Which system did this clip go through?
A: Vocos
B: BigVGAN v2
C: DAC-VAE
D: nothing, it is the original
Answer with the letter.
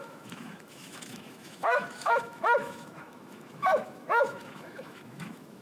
C